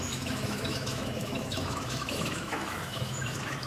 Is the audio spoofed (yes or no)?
yes